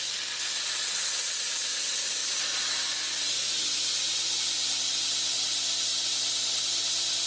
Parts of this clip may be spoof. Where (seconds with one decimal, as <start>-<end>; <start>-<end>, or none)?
none